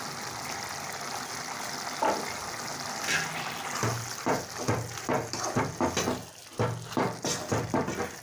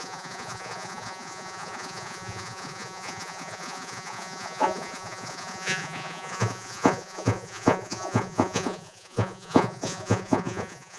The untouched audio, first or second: first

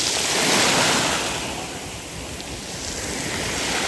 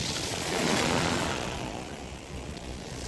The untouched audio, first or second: first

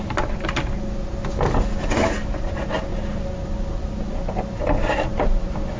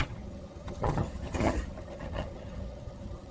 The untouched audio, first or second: first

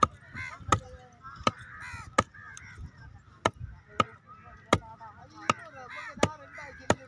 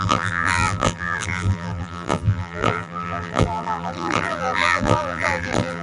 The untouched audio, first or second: first